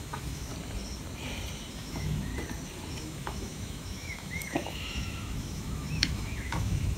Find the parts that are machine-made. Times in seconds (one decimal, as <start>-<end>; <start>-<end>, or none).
0.0-0.5; 1.7-2.3; 3.0-7.0